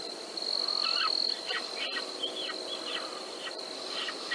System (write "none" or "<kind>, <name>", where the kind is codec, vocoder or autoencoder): none